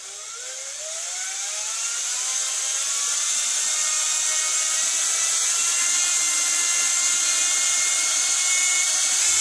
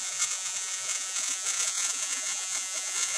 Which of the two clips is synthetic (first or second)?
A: second